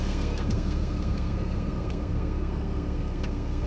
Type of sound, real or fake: fake